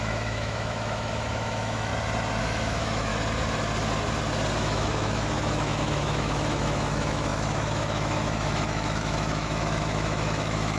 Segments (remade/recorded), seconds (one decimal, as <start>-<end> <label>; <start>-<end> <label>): 0.0-1.9 remade; 1.9-2.4 recorded; 2.4-3.1 remade; 3.1-4.6 recorded; 4.6-10.8 remade